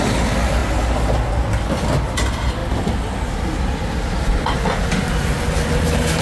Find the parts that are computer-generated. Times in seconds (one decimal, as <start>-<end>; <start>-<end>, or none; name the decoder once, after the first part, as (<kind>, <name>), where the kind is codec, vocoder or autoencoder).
none